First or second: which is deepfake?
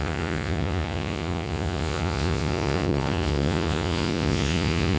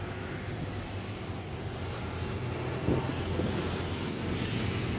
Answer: first